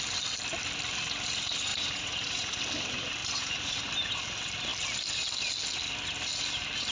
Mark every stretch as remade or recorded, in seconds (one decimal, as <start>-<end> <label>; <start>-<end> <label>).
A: 0.0-1.7 recorded; 1.7-2.6 remade; 2.6-3.2 recorded; 3.2-3.8 remade; 3.8-6.9 recorded